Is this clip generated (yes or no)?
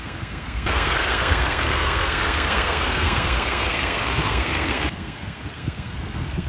yes